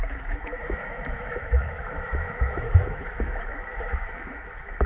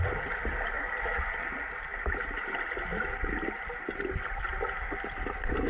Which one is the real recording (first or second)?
second